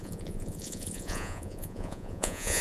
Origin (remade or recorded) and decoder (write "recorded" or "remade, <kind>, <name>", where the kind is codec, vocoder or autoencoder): remade, vocoder, Vocos